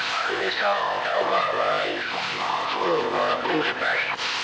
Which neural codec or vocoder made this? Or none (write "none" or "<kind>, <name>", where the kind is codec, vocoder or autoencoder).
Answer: codec, ZipCodec